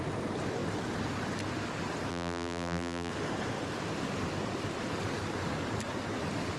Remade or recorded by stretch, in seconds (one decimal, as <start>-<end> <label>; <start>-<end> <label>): 0.0-2.1 recorded; 2.1-3.1 remade; 3.1-6.6 recorded